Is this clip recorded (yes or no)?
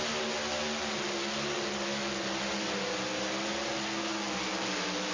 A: yes